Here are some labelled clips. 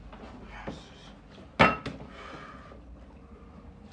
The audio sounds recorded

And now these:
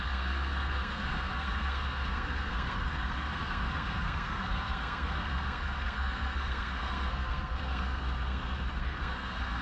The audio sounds remade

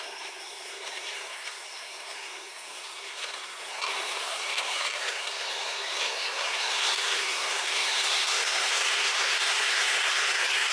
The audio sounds remade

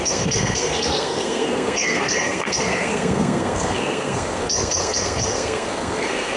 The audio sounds remade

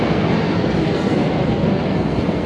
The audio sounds remade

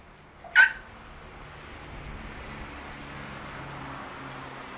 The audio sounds recorded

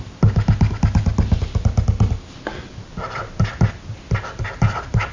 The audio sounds recorded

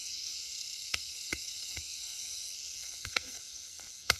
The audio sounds remade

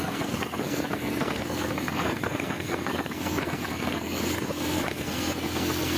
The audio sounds remade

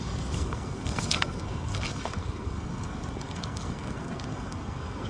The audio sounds remade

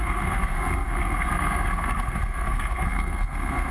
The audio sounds remade